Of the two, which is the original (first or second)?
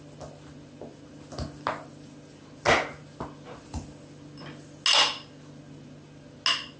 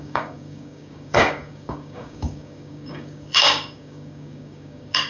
first